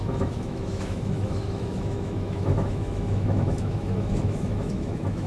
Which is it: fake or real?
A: fake